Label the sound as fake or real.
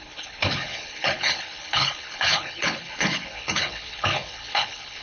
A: fake